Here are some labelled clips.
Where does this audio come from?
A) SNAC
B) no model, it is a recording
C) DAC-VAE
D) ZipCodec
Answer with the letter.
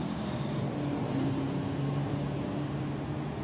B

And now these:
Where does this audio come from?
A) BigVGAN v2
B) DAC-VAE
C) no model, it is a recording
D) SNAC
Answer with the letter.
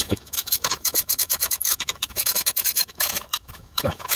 B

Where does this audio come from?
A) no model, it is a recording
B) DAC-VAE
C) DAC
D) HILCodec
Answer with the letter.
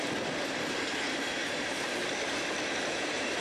A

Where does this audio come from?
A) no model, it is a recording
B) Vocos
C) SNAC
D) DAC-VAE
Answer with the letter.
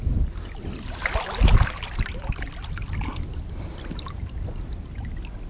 A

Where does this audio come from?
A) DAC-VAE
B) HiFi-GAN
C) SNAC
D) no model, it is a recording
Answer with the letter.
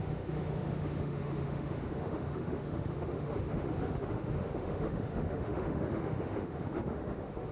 A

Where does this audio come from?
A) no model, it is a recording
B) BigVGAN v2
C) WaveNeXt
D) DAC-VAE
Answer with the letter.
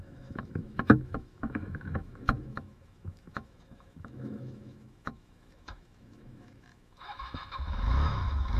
D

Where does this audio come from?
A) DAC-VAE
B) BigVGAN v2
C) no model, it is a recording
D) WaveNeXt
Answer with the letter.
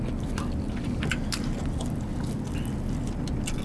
C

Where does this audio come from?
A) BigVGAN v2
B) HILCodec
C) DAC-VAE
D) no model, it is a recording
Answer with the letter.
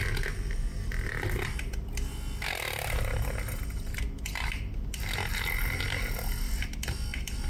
D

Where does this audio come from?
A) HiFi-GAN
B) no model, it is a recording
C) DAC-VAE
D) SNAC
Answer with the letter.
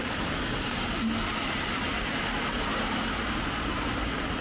B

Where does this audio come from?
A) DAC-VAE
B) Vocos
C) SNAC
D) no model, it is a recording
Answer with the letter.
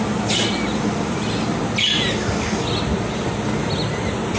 D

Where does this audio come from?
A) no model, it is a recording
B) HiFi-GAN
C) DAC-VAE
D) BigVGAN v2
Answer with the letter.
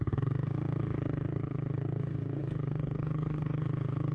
C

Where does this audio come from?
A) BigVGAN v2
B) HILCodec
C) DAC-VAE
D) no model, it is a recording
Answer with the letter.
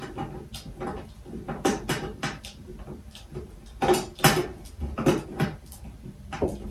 D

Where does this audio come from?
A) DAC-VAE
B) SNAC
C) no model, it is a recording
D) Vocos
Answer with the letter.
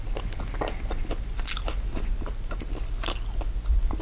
C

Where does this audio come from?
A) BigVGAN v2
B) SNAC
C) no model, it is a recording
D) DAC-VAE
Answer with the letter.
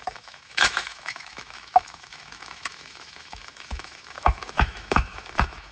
D